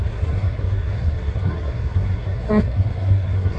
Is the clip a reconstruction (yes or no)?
yes